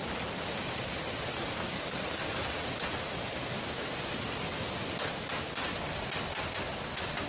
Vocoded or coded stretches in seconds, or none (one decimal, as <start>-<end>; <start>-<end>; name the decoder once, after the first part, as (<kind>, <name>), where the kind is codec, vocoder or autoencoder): 0.0-3.6 (vocoder, BigVGAN v2)